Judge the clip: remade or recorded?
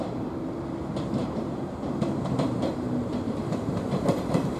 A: remade